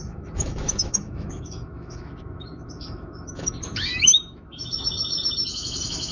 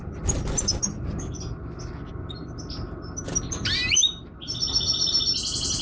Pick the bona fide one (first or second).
second